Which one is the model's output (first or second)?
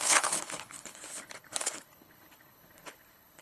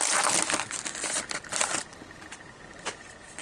first